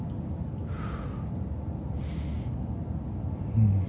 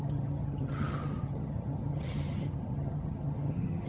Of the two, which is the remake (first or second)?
second